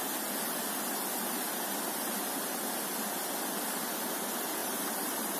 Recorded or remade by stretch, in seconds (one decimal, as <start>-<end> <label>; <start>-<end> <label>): 0.0-4.6 recorded; 4.6-5.4 remade

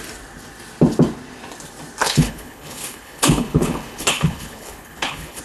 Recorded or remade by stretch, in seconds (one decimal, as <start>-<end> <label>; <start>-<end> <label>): 0.0-2.0 recorded; 2.0-5.4 remade